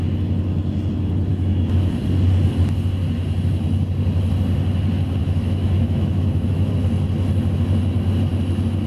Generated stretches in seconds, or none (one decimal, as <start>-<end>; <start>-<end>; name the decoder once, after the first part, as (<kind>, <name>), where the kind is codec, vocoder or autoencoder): 1.3-1.9 (autoencoder, DAC-VAE); 5.2-6.7